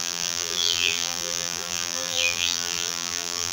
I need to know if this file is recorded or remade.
remade